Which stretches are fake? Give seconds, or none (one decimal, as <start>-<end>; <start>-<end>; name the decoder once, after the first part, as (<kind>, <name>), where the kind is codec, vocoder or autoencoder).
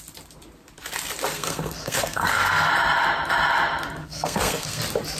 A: 1.3-2.7 (codec, SNAC); 4.0-4.8